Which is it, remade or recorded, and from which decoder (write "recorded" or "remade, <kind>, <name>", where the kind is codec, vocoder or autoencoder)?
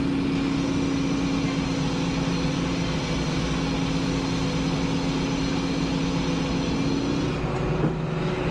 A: recorded